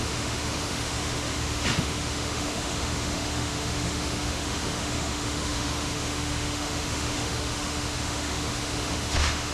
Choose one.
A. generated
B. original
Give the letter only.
A